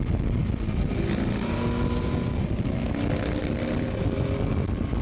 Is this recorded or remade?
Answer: recorded